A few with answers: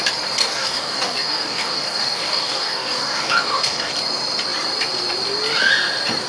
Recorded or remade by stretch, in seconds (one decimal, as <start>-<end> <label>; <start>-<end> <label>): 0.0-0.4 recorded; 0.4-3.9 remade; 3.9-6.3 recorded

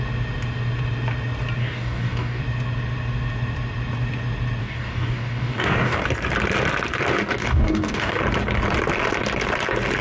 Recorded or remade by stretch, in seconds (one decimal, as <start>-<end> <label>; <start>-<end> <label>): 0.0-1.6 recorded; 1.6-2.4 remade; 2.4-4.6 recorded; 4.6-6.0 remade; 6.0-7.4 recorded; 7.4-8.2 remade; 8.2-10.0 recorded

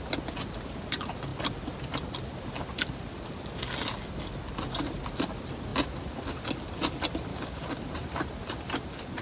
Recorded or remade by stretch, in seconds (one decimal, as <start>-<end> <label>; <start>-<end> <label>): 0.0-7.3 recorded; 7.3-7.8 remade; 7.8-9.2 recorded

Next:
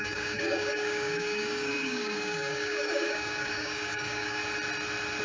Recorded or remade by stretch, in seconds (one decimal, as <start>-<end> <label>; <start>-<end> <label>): 0.0-4.4 remade; 4.4-5.2 recorded

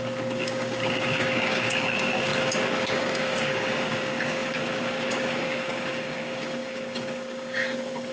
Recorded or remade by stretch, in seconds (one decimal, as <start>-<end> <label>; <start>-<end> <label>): 0.0-8.1 remade

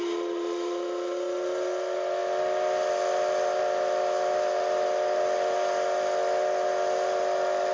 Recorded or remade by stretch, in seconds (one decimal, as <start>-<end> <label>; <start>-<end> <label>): 0.0-7.7 recorded

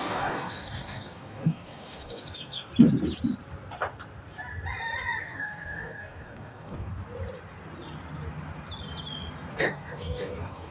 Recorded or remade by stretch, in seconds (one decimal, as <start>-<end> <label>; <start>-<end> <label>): 0.0-2.7 remade; 2.7-5.2 recorded; 5.2-6.9 remade; 6.9-9.5 recorded; 9.5-10.7 remade